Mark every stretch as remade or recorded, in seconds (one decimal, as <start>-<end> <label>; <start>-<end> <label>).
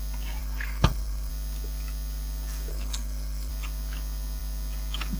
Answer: 0.0-0.4 recorded; 0.4-1.3 remade; 1.3-2.7 recorded; 2.7-3.5 remade; 3.5-5.2 recorded